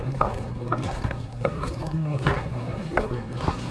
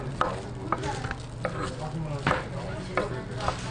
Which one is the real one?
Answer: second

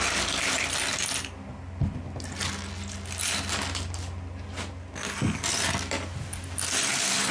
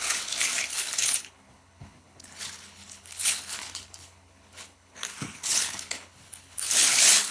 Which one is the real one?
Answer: first